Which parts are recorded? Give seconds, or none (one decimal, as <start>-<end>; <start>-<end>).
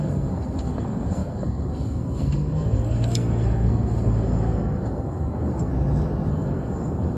5.7-6.3